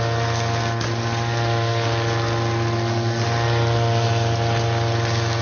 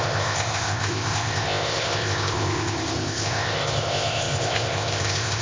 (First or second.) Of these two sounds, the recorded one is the first